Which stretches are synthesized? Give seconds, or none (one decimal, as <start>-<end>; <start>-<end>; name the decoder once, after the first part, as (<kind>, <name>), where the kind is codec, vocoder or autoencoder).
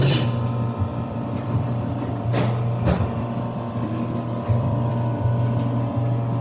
0.9-1.8 (vocoder, BigVGAN v2); 3.2-4.9